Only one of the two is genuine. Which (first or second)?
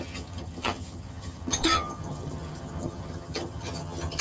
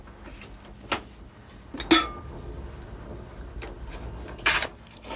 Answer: second